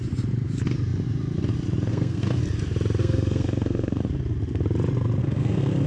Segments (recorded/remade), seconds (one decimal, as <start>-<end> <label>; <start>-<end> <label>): 0.0-1.9 recorded; 1.9-2.4 remade; 2.4-3.0 recorded; 3.0-4.0 remade; 4.0-5.2 recorded; 5.2-5.9 remade